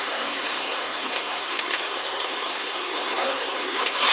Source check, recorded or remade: remade